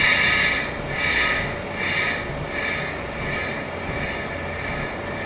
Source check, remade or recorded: recorded